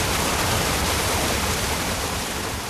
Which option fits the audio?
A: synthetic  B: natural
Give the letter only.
B